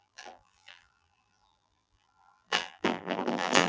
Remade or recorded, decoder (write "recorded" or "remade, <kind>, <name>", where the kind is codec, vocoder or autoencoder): remade, vocoder, BigVGAN v2